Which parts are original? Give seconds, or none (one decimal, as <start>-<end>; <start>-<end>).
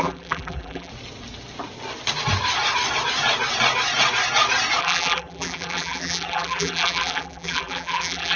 0.9-4.8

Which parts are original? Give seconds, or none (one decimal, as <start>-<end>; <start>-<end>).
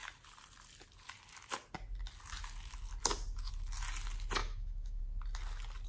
0.0-4.4; 5.0-5.9